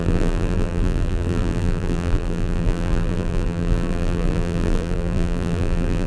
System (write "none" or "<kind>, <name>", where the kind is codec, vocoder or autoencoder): vocoder, BigVGAN v2